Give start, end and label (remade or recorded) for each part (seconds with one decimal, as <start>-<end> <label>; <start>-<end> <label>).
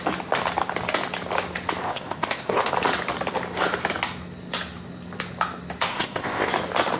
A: 0.0-1.8 recorded; 1.8-2.7 remade; 2.7-5.9 recorded; 5.9-6.5 remade; 6.5-7.0 recorded